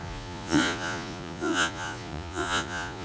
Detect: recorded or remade remade